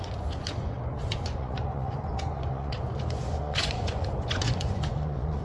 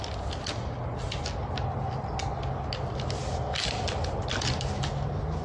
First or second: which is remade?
first